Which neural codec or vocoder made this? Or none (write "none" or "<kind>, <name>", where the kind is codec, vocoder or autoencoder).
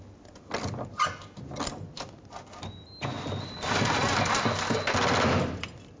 none